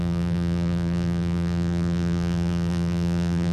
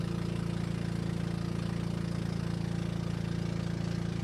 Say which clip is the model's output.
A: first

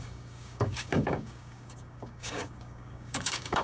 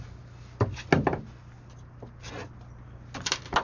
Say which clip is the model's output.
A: first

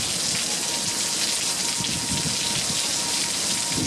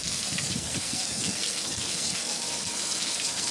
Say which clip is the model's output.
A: second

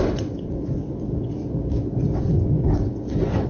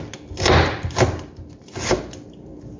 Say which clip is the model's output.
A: first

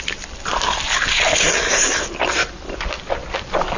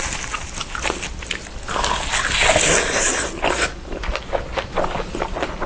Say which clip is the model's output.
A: first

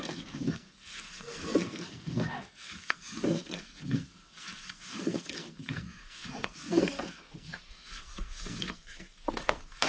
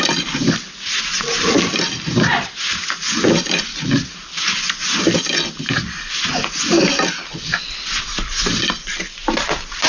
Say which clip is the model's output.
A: first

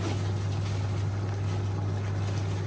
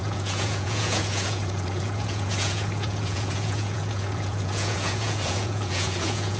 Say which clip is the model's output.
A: second